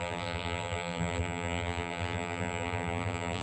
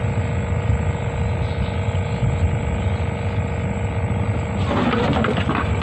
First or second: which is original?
second